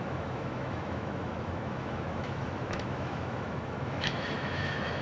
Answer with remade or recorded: remade